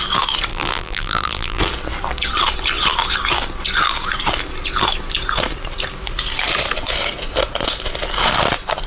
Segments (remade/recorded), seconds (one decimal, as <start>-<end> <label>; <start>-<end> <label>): 0.0-0.5 recorded; 0.5-1.6 remade; 1.6-8.9 recorded